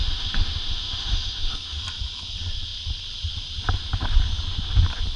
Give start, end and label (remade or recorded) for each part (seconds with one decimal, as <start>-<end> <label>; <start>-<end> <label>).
0.0-1.8 remade; 1.8-5.2 recorded